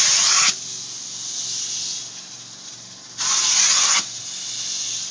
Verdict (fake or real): real